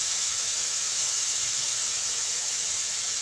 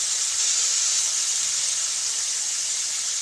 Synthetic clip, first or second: first